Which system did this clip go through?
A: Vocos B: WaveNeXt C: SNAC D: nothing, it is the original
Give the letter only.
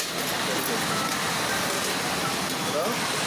D